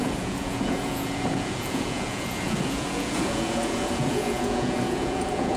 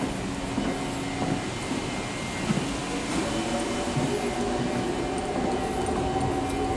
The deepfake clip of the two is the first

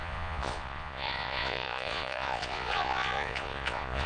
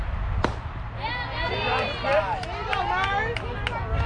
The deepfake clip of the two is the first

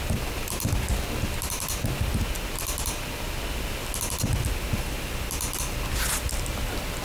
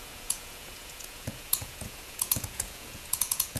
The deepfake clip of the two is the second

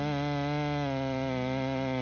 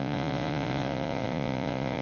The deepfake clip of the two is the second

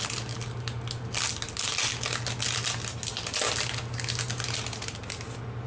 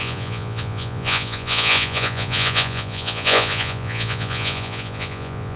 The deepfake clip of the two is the second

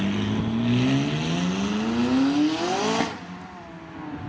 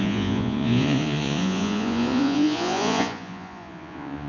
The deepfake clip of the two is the second